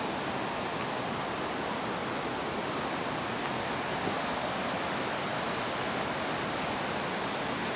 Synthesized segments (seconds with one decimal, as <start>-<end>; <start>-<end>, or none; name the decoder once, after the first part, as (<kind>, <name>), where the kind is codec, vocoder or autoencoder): none